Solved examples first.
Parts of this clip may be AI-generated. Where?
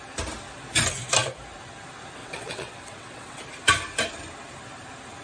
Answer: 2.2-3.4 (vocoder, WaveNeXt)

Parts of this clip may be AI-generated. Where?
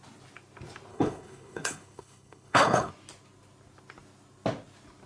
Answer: 0.9-2.9 (codec, HILCodec)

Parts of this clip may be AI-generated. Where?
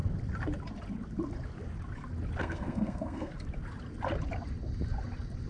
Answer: 2.4-3.3 (codec, SNAC)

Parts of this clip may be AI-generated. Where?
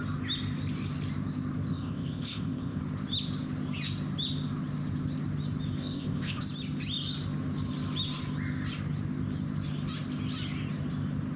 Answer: 1.7-2.8 (codec, ZipCodec); 5.8-6.4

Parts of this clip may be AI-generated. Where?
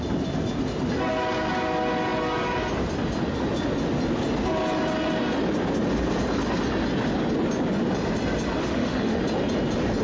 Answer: 8.6-9.2 (autoencoder, DAC-VAE)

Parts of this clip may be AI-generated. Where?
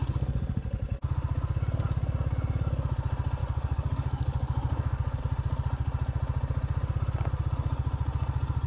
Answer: 3.4-5.2 (codec, DAC)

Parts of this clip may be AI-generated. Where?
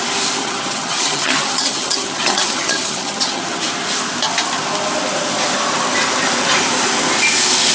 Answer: 0.4-3.4 (vocoder, HiFi-GAN)